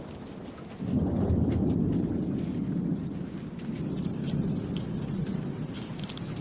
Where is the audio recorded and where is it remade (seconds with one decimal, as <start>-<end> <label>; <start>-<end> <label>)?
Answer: 0.0-6.4 recorded